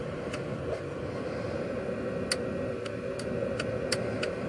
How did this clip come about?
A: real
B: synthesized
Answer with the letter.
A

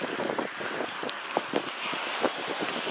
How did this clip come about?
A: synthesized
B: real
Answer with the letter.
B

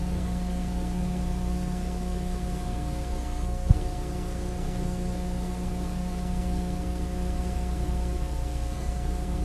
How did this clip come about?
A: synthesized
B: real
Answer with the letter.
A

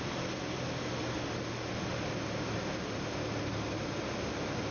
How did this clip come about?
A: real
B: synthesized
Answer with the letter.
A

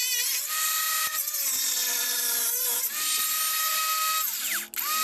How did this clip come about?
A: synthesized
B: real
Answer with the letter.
B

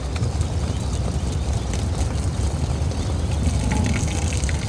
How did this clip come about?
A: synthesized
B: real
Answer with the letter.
B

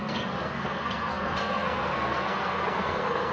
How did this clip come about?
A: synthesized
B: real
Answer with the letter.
A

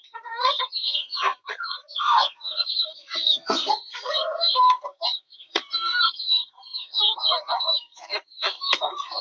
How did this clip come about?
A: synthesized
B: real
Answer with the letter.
A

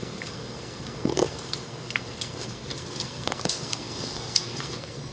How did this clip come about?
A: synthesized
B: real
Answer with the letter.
A